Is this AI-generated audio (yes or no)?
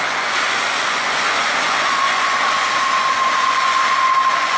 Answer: yes